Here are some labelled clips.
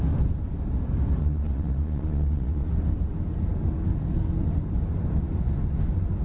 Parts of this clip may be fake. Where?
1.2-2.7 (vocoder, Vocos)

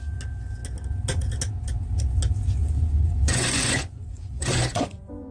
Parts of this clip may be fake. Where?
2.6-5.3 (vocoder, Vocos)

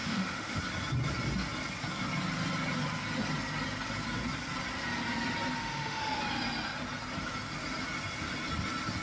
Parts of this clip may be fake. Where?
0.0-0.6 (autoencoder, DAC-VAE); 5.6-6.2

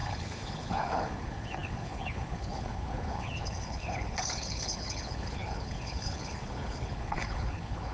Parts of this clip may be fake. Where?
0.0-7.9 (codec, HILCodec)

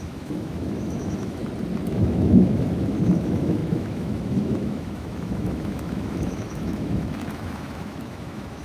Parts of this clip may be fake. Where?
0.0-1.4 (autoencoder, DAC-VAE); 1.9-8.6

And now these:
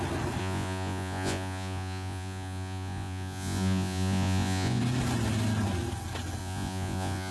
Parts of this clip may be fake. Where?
0.4-4.8 (vocoder, Vocos); 6.4-7.3